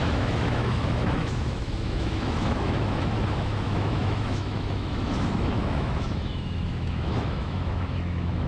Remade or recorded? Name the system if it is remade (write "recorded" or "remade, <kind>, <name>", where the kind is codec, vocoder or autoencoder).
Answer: remade, autoencoder, DAC-VAE